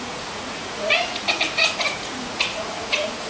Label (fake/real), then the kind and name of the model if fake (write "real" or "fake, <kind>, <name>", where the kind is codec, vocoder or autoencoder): fake, vocoder, Vocos